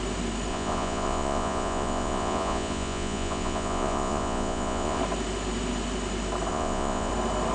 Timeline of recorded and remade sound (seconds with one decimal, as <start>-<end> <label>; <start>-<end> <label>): 0.0-0.5 recorded; 0.5-5.0 remade; 5.0-6.5 recorded; 6.5-7.1 remade; 7.1-7.5 recorded

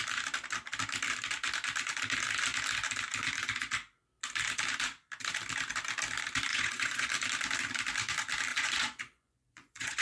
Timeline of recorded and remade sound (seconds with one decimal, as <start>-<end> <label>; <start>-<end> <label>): 0.0-6.5 recorded; 6.5-7.1 remade; 7.1-8.5 recorded; 8.5-10.0 remade